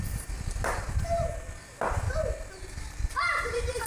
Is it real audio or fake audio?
fake